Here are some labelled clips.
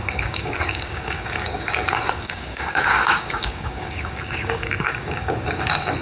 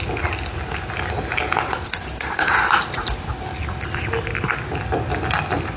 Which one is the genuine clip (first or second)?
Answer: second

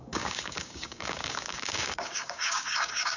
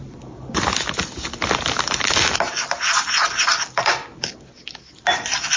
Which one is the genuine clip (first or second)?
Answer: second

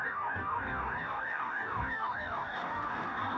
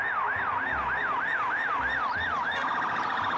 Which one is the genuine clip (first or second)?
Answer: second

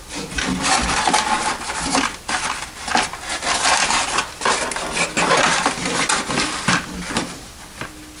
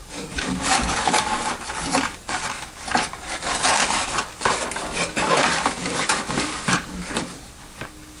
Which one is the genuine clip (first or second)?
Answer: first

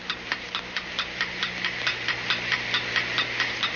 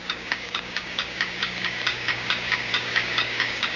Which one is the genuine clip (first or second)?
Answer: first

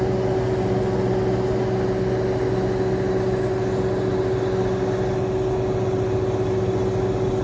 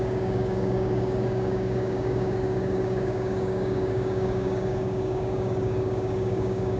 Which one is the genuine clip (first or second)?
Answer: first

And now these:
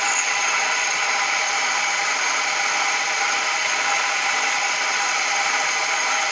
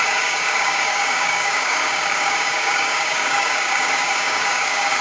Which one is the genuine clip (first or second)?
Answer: first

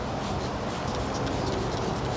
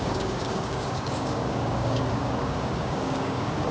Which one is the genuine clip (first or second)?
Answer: first